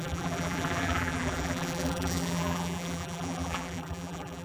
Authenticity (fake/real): fake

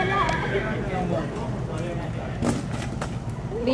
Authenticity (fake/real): real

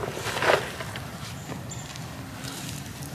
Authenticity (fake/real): fake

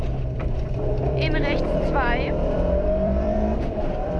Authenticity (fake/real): fake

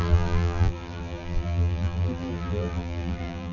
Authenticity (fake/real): fake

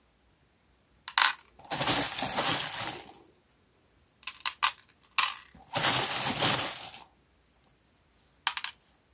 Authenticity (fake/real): real